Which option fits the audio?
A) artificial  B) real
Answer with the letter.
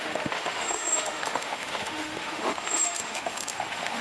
A